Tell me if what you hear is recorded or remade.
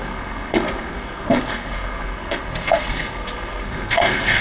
remade